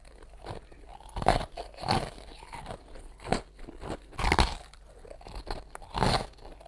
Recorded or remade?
recorded